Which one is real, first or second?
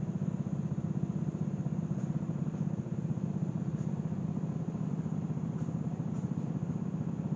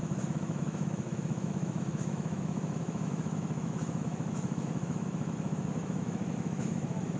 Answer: first